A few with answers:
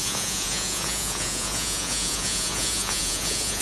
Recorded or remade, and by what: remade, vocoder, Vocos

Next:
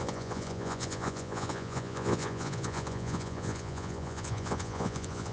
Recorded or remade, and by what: remade, vocoder, Vocos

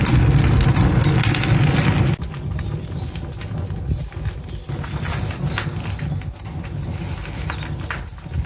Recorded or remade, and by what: recorded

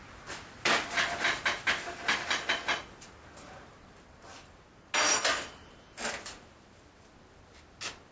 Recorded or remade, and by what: recorded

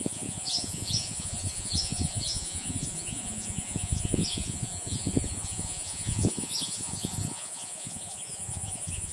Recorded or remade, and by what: remade, vocoder, Vocos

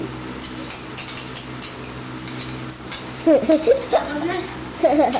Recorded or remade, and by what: recorded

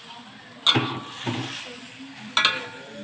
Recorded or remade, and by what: recorded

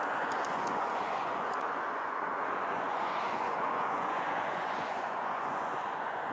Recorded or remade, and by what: remade, vocoder, Vocos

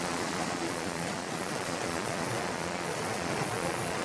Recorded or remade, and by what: remade, vocoder, Vocos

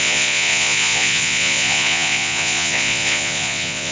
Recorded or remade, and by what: remade, vocoder, Vocos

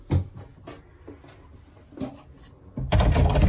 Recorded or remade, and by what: recorded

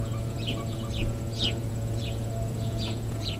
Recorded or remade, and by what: remade, vocoder, Vocos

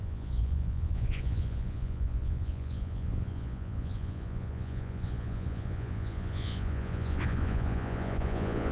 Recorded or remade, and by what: remade, vocoder, Vocos